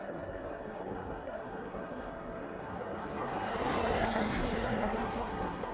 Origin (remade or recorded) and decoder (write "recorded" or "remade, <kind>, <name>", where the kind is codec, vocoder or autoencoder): remade, codec, SNAC